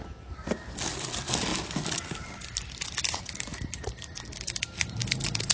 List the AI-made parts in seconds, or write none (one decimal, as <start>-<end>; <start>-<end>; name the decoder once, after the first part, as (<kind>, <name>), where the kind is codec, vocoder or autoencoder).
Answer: none